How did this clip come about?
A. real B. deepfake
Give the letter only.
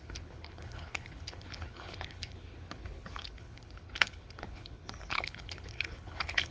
B